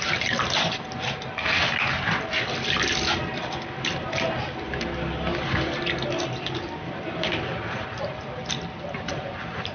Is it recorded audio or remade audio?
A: recorded